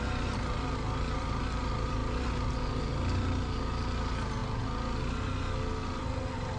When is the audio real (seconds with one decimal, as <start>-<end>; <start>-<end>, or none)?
0.0-6.6